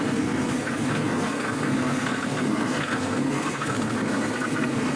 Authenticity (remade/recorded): remade